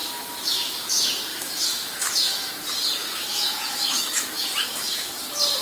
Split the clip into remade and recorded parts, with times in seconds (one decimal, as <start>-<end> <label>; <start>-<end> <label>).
0.0-0.9 remade; 0.9-1.3 recorded; 1.3-2.5 remade; 2.5-3.0 recorded; 3.0-5.1 remade; 5.1-5.6 recorded